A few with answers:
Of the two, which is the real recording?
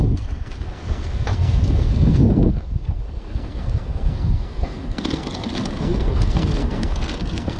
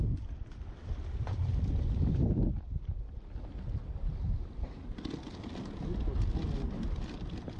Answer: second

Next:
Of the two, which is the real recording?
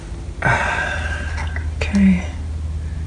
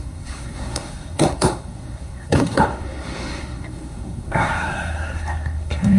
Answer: first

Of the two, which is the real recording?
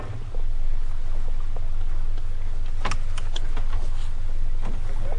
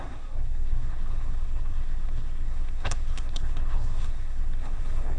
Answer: first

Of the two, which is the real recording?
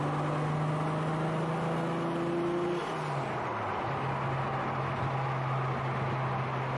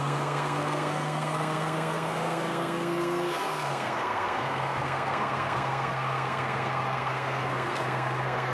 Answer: first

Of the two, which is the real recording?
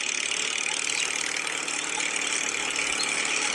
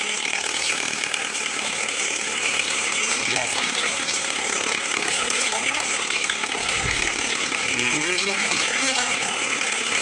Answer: first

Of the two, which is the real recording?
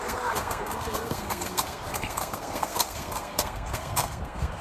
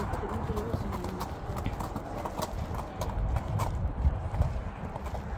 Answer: second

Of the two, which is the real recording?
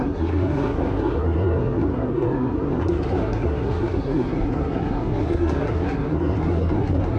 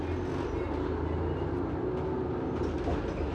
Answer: second